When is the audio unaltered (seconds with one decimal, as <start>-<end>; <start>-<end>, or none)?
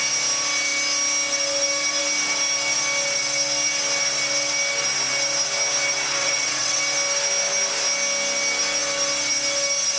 0.0-6.2; 6.8-10.0